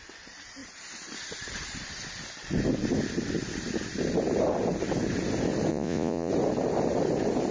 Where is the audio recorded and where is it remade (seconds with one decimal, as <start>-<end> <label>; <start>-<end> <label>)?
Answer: 0.0-5.7 recorded; 5.7-6.3 remade; 6.3-7.5 recorded